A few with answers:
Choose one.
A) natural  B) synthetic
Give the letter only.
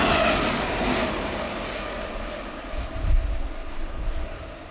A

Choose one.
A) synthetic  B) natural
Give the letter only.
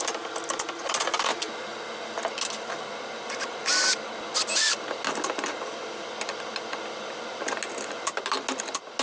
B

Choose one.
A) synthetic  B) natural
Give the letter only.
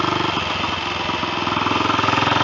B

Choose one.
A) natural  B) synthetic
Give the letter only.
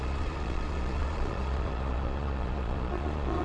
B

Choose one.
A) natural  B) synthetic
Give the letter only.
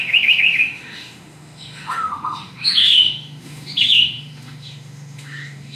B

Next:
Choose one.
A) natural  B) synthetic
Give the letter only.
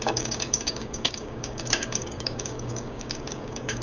B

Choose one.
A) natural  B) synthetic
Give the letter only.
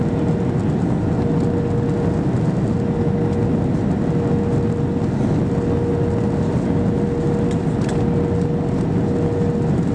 A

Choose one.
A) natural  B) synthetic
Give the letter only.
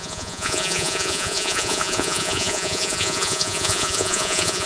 B